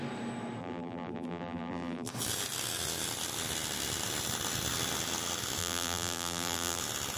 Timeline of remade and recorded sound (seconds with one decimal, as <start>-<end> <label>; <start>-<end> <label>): 0.0-0.6 recorded; 0.6-2.1 remade; 2.1-5.6 recorded; 5.6-6.8 remade; 6.8-7.2 recorded